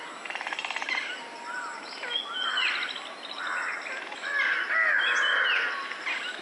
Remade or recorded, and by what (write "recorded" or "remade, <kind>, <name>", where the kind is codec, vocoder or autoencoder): recorded